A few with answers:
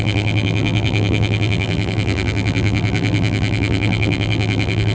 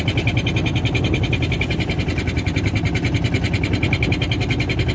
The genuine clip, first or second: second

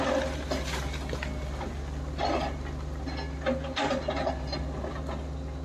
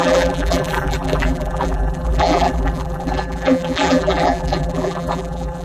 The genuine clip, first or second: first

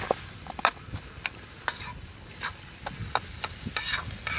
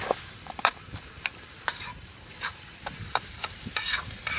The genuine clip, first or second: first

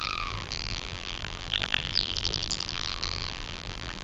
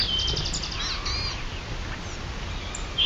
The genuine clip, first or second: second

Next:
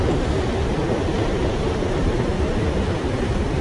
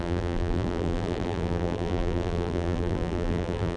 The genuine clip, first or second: first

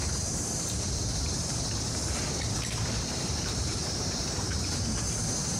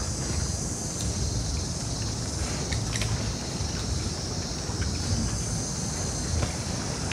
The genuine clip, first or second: second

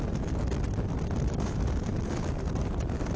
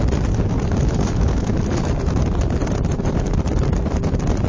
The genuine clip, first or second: first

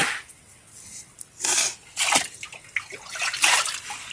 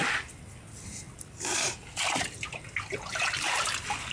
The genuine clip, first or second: first